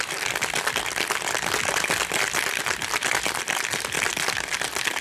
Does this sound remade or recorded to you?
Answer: recorded